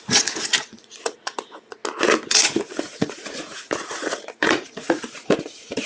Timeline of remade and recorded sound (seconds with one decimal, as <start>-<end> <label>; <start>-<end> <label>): 0.0-1.8 remade; 1.8-2.3 recorded; 2.3-5.9 remade

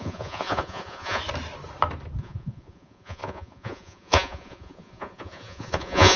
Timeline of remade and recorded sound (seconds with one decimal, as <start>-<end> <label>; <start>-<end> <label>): 0.0-1.2 remade; 1.2-2.2 recorded; 2.2-6.2 remade

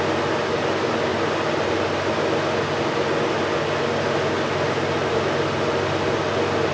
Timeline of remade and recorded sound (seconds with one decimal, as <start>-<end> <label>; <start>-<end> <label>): 0.0-6.7 recorded